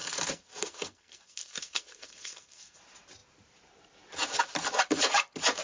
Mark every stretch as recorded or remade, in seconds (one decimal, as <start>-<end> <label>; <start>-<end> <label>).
0.0-2.8 remade; 2.8-5.6 recorded